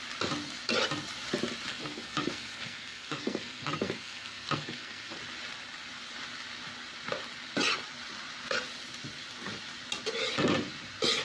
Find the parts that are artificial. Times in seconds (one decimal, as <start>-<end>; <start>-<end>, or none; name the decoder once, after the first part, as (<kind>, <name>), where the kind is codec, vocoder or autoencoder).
1.7-5.2 (codec, SNAC)